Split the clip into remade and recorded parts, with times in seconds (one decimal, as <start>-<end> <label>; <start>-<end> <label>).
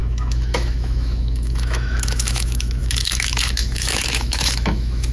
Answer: 0.0-5.1 remade